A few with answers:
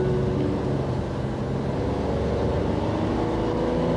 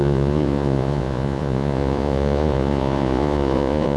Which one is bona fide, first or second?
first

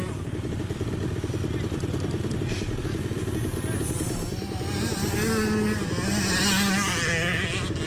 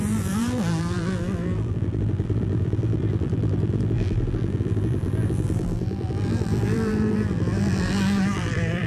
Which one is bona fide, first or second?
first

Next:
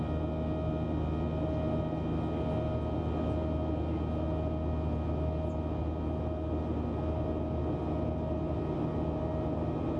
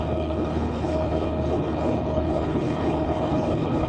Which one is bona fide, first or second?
first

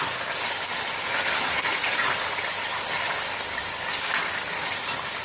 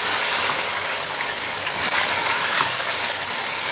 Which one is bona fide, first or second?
first